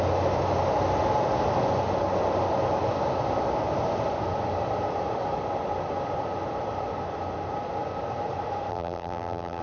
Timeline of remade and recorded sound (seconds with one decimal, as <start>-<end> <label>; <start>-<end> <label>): 0.0-8.7 recorded; 8.7-9.6 remade